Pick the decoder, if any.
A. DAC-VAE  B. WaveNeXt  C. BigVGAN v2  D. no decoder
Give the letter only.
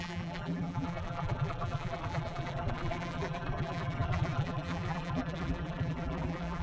C